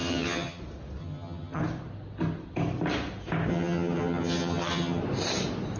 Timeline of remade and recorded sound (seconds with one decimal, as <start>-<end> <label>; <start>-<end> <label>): 0.0-0.6 remade; 0.6-1.0 recorded; 1.0-1.6 remade; 1.6-3.5 recorded; 3.5-5.0 remade; 5.0-5.8 recorded